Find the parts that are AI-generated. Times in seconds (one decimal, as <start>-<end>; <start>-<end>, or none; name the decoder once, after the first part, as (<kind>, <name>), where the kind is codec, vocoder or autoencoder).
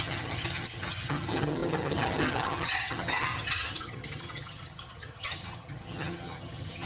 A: 0.0-6.9 (vocoder, HiFi-GAN)